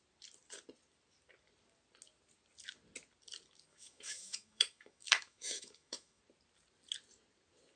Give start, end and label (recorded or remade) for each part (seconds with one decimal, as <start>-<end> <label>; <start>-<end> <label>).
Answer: 0.0-3.7 recorded; 3.7-6.2 remade; 6.2-7.8 recorded